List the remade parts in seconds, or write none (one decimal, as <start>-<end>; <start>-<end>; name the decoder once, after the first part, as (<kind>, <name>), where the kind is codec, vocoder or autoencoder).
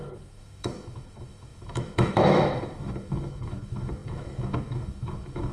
0.0-5.5 (autoencoder, DAC-VAE)